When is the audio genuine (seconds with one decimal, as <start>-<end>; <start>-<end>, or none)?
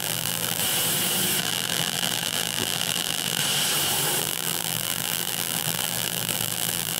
0.6-1.4; 3.4-4.2